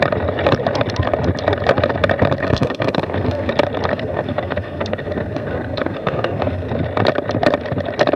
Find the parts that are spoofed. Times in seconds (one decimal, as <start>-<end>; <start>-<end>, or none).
2.4-3.5; 3.9-6.7